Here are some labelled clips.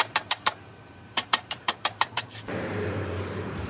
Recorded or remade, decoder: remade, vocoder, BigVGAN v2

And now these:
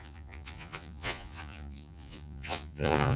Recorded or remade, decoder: remade, vocoder, Vocos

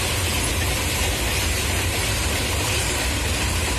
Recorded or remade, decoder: recorded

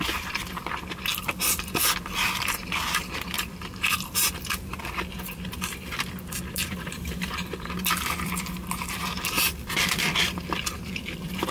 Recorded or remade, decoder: remade, vocoder, BigVGAN v2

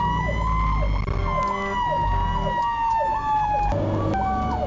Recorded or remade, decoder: recorded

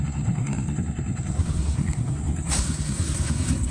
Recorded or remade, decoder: remade, codec, SNAC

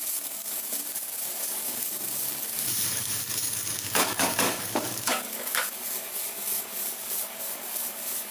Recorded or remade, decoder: remade, codec, DAC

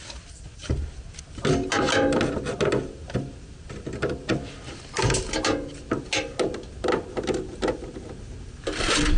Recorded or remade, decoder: recorded